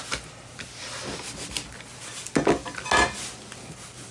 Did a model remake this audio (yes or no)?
no